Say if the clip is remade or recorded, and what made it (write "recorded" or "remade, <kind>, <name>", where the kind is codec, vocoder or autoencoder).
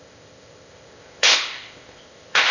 remade, codec, ZipCodec